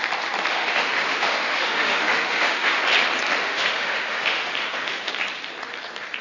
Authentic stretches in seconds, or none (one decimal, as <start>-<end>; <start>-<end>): 0.0-0.5; 2.8-3.4; 5.1-6.2